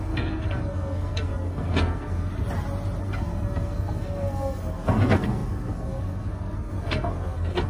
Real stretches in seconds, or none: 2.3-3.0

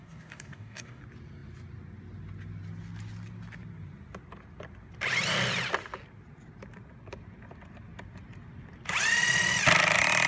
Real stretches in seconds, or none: 1.0-10.3

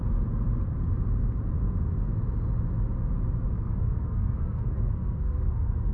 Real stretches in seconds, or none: 0.0-3.5

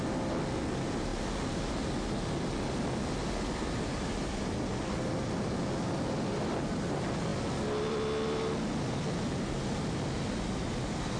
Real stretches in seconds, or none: 0.0-11.2

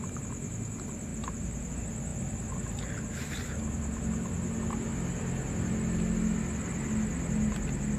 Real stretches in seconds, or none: 0.0-1.1; 1.7-8.0

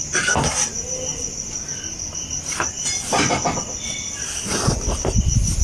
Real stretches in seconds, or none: 0.0-5.6